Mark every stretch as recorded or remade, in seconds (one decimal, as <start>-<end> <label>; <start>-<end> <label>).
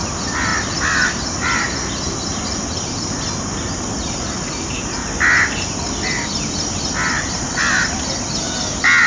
0.0-9.1 recorded